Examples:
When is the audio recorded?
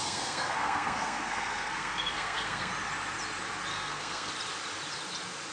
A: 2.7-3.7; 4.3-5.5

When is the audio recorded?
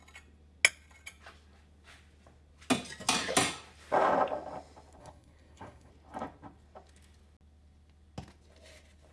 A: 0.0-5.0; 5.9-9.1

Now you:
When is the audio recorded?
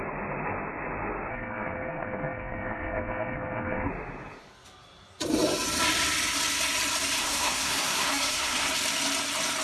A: 0.0-1.3; 3.9-7.2; 8.7-9.6